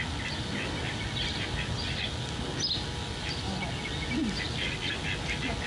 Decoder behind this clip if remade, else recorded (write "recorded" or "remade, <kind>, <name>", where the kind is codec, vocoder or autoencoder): recorded